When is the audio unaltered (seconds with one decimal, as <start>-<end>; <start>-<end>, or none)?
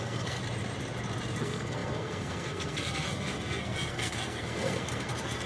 0.4-1.4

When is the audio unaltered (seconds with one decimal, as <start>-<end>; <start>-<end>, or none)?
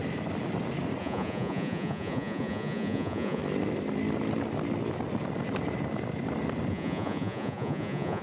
0.0-1.0; 3.4-6.7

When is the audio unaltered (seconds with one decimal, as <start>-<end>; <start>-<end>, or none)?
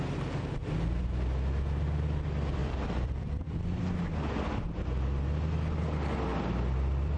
0.0-2.6; 3.8-6.3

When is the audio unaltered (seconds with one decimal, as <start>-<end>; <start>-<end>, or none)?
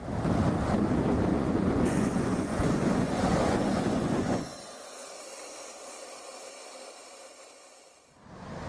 0.0-1.3; 5.2-8.7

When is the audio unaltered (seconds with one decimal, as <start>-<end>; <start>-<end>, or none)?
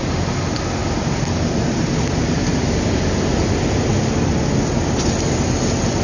0.0-6.0